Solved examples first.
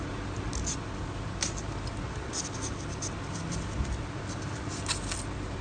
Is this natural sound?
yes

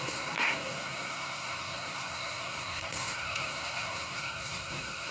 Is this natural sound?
no